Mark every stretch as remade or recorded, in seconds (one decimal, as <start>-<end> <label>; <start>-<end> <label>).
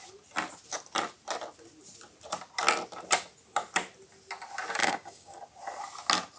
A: 0.0-4.8 recorded; 4.8-5.4 remade; 5.4-6.4 recorded